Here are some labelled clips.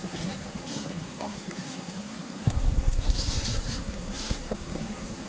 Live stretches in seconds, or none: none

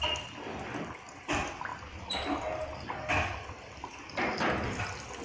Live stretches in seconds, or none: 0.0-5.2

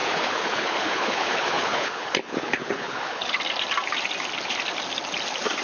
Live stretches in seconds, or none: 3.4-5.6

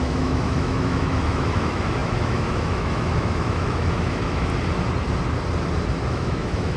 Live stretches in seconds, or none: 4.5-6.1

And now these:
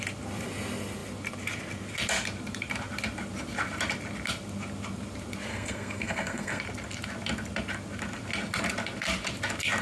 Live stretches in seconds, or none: 0.0-5.5; 6.6-9.8

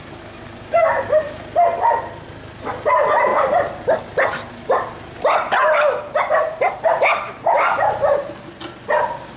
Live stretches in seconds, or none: 0.0-9.4

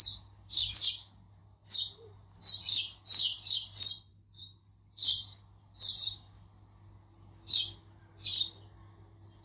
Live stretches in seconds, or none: 0.0-9.4